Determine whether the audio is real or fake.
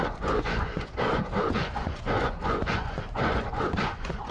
fake